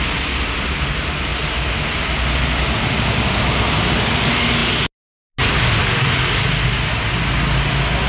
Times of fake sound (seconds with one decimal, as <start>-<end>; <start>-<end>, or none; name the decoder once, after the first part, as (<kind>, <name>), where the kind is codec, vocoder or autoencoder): none